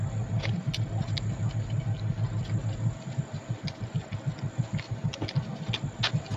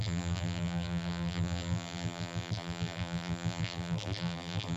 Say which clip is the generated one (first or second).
second